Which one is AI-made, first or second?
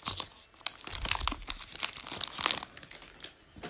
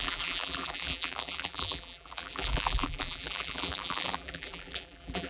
second